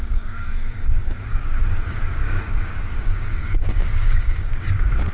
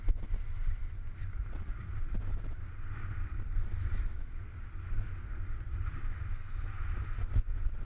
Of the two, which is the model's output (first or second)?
first